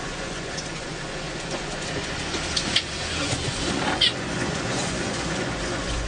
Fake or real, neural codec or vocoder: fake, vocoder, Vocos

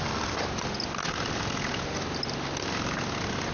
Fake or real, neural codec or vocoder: real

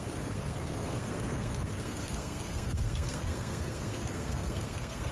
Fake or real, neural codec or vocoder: fake, codec, SNAC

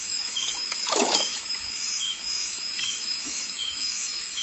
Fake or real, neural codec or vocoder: fake, autoencoder, DAC-VAE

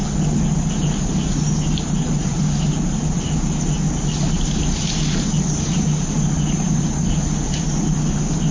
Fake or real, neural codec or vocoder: real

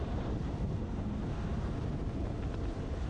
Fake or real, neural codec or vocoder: fake, vocoder, BigVGAN v2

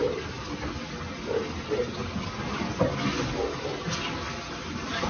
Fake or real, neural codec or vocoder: real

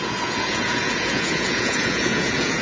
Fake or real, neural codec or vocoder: fake, vocoder, Vocos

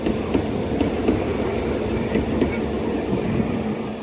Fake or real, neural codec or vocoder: real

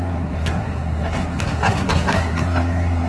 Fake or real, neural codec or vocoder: fake, codec, SNAC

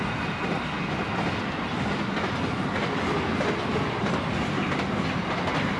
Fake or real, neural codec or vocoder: real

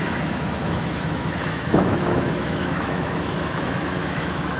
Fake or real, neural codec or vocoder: fake, autoencoder, DAC-VAE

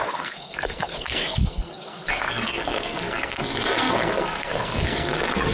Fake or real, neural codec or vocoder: fake, codec, SNAC